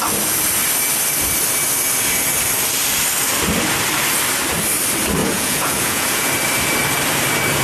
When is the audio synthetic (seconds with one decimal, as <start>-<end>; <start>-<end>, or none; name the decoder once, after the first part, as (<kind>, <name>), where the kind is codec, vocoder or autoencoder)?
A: 5.2-6.3 (vocoder, Vocos)